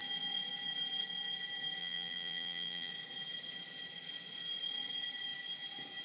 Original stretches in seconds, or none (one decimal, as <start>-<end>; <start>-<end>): 0.0-1.8; 2.9-6.0